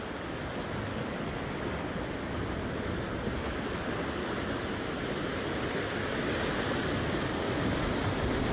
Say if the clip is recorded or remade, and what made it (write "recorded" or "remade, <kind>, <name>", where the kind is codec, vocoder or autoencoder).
recorded